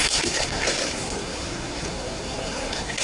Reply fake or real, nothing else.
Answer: fake